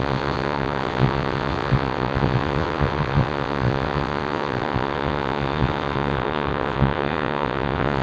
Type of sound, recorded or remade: remade